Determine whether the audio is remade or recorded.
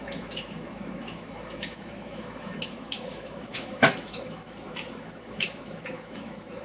remade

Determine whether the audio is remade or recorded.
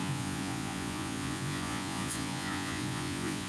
remade